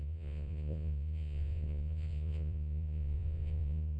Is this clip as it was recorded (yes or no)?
no